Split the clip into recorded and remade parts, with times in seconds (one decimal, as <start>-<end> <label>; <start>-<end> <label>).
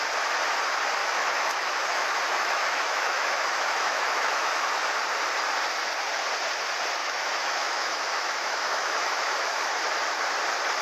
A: 0.0-1.0 recorded; 1.0-4.7 remade; 4.7-7.0 recorded; 7.0-9.8 remade; 9.8-10.8 recorded